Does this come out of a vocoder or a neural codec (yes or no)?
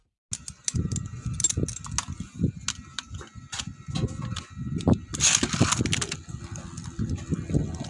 no